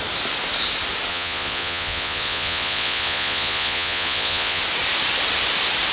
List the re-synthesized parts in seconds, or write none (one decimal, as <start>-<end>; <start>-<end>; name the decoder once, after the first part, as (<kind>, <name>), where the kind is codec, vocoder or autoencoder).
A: 1.1-4.6 (vocoder, Vocos)